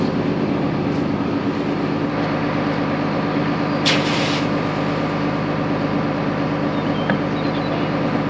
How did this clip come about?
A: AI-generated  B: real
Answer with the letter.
B